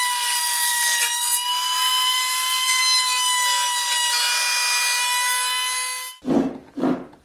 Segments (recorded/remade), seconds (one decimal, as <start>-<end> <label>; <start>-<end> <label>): 0.0-2.8 remade; 2.8-7.2 recorded